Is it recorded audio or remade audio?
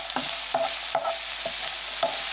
recorded